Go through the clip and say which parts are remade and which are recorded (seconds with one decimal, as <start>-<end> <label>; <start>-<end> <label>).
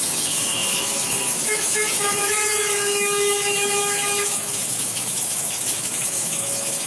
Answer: 0.0-6.9 remade